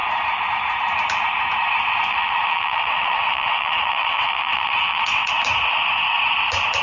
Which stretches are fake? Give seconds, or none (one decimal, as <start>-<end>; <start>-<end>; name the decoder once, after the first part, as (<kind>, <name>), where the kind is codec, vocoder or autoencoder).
2.1-5.3 (vocoder, WaveNeXt)

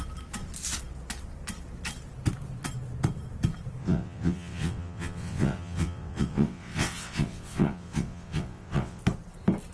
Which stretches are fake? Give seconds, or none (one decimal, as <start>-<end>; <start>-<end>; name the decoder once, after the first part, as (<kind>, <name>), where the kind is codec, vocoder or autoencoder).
3.8-9.0 (vocoder, WaveNeXt)

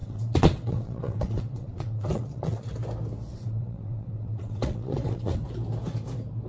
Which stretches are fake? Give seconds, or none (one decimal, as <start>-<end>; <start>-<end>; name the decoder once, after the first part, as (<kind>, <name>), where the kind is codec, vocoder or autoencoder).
0.0-2.7 (vocoder, WaveNeXt); 3.3-5.4